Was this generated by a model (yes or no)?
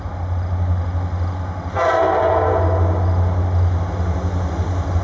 no